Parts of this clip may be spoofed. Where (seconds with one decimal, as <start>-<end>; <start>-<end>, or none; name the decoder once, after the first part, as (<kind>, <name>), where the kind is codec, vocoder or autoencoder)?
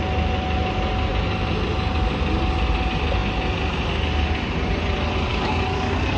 5.3-6.2 (codec, DAC)